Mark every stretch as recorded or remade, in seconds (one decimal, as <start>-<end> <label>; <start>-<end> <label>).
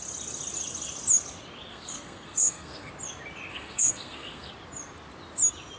0.0-1.7 recorded; 1.7-2.9 remade; 2.9-3.5 recorded; 3.5-4.5 remade; 4.5-5.8 recorded